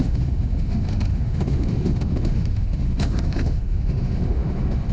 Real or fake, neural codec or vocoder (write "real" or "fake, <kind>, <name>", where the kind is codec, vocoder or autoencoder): fake, autoencoder, DAC-VAE